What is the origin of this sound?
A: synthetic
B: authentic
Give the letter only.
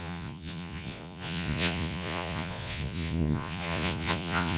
A